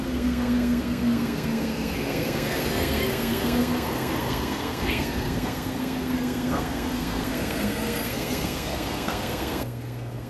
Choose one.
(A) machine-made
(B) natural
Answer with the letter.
A